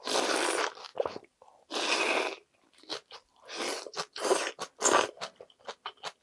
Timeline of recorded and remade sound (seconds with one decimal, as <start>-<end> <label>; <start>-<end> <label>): 0.0-6.2 recorded